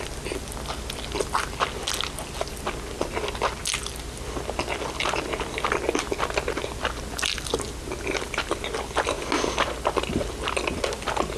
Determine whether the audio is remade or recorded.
recorded